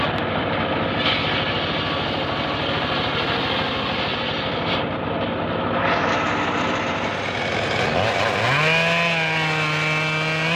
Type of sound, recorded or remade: recorded